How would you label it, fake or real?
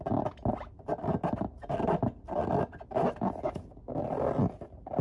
real